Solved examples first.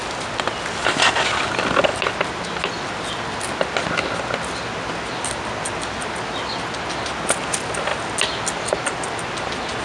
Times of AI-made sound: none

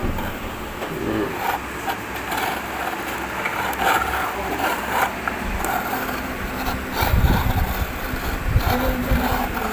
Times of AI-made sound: 3.5-7.2

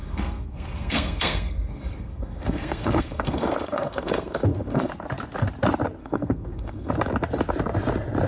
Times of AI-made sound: 0.0-4.9; 6.0-6.9

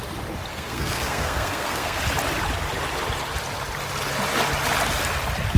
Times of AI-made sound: 0.5-2.0

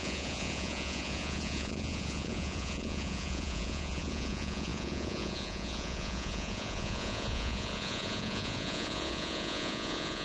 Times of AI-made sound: 0.0-10.2

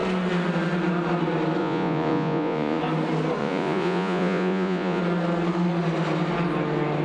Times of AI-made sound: 1.6-2.8; 3.4-5.0